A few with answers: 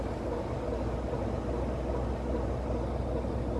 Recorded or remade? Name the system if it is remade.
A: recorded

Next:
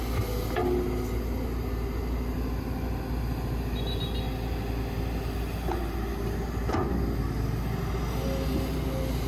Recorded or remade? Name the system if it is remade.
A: recorded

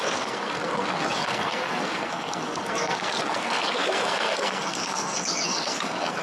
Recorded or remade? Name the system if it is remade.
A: remade, codec, SNAC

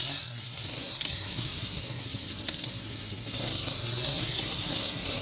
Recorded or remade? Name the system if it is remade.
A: remade, codec, SNAC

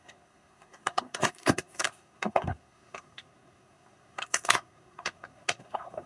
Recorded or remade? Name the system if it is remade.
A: remade, codec, SNAC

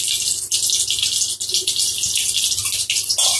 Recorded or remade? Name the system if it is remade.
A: recorded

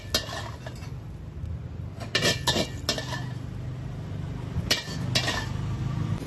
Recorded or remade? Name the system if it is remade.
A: recorded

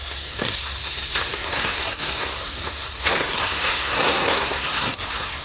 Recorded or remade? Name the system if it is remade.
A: remade, codec, SNAC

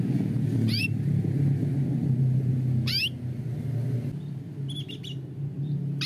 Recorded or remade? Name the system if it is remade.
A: recorded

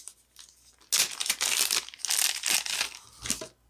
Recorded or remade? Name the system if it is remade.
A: recorded